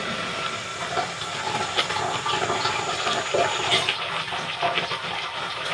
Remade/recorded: recorded